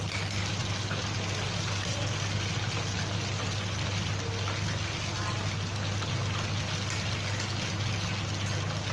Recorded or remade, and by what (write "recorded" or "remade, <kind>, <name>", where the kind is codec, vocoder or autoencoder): recorded